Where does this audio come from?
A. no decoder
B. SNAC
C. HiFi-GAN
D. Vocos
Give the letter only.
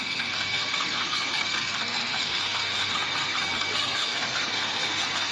B